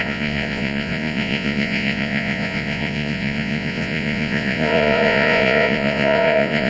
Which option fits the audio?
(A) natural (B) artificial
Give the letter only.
B